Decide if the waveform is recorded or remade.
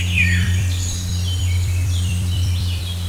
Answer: remade